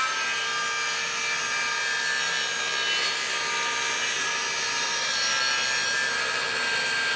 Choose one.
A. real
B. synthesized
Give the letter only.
A